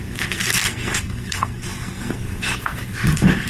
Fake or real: fake